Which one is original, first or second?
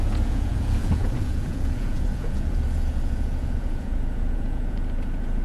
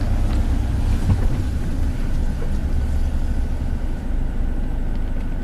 second